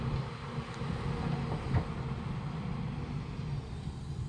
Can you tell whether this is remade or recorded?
recorded